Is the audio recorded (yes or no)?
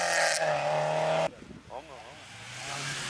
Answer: yes